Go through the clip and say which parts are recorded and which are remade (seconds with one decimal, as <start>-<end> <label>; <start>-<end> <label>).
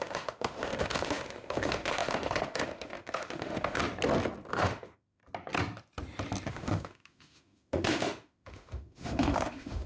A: 0.0-3.8 remade; 3.8-4.5 recorded; 4.5-5.2 remade; 5.2-6.5 recorded; 6.5-9.9 remade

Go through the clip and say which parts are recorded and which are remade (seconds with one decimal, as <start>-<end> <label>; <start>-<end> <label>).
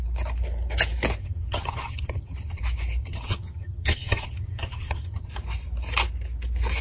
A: 0.0-1.2 recorded; 1.2-2.6 remade; 2.6-3.0 recorded; 3.0-5.3 remade; 5.3-6.8 recorded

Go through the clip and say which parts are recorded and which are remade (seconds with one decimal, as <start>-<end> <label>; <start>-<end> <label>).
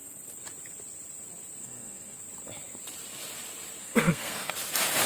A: 0.0-1.6 recorded; 1.6-2.2 remade; 2.2-3.8 recorded; 3.8-4.5 remade; 4.5-5.1 recorded